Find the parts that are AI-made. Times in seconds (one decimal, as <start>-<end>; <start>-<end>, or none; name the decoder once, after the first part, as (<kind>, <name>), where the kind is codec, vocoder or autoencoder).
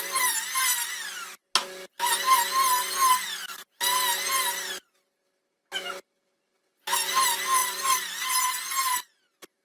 none